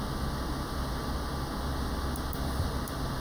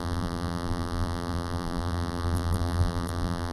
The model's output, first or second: second